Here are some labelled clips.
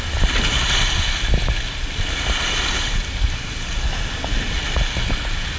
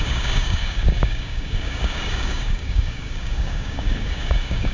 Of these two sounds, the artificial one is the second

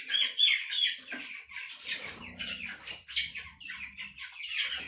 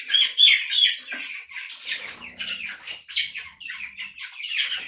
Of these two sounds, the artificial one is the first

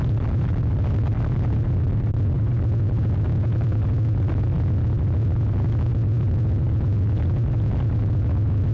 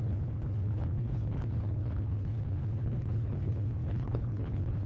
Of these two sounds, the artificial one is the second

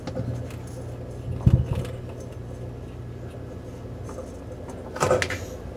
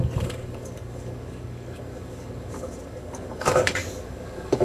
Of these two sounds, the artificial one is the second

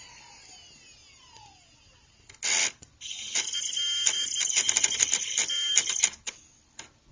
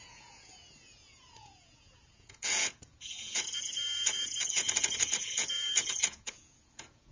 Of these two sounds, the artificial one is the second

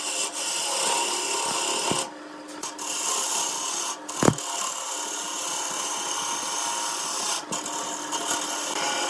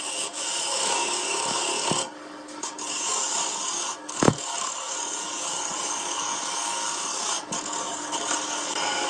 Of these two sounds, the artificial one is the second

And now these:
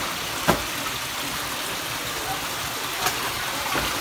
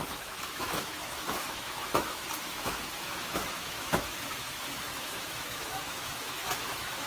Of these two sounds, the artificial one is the second